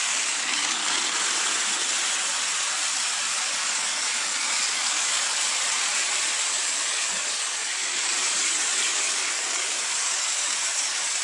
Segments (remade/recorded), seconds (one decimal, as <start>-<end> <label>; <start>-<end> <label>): 0.0-0.8 remade; 0.8-3.6 recorded; 3.6-5.3 remade; 5.3-6.6 recorded; 6.6-11.2 remade